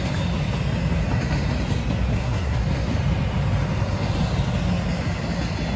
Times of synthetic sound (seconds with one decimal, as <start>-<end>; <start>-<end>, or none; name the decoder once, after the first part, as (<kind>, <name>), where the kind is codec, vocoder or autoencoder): 2.1-2.6 (codec, SNAC)